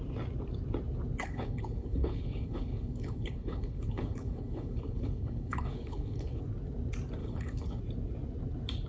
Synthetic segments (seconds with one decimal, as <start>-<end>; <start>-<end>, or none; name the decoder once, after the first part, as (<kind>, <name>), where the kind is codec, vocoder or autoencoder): 1.2-6.4 (codec, HILCodec); 7.2-7.8